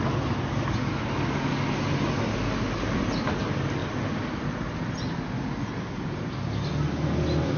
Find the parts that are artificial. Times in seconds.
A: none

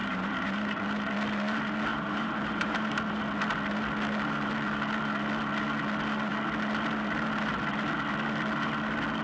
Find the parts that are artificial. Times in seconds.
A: 0.0-0.8 (vocoder, BigVGAN v2); 1.9-3.0